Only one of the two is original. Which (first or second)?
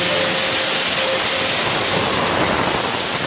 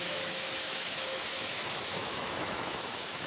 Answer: first